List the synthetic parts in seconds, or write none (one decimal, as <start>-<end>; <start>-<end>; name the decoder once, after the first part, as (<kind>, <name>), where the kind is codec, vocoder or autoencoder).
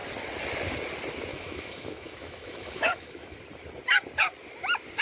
1.3-3.4 (autoencoder, DAC-VAE)